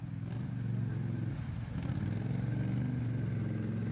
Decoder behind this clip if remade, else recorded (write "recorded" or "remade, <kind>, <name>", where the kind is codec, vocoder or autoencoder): recorded